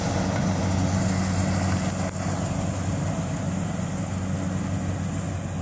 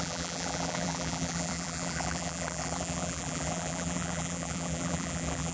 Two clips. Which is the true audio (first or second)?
first